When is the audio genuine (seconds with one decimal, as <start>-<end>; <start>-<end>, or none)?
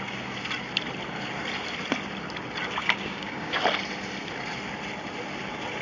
0.0-2.8; 3.6-5.8